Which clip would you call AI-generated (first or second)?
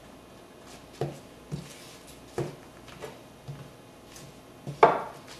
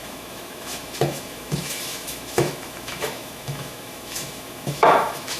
second